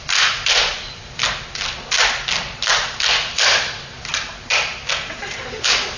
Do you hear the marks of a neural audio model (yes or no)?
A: no